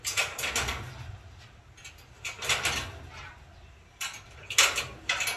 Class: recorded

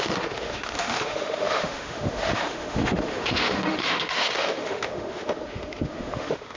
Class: remade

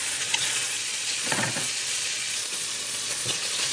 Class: remade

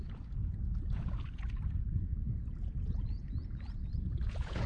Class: remade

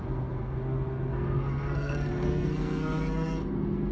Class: remade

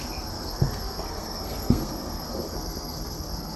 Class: remade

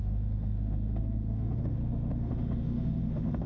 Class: remade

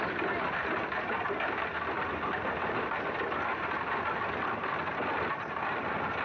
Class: recorded